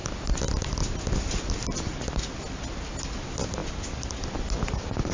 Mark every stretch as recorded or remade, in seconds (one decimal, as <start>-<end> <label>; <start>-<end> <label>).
0.0-5.1 recorded